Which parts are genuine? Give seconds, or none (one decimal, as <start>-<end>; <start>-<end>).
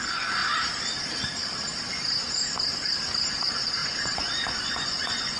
0.4-3.3